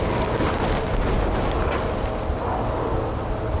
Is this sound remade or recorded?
recorded